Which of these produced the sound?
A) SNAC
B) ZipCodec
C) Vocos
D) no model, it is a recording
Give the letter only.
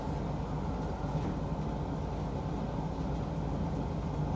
D